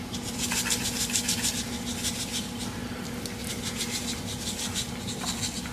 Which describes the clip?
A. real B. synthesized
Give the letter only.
A